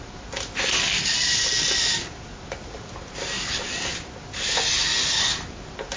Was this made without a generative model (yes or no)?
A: yes